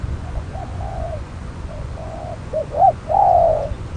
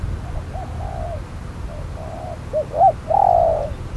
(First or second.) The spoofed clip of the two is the first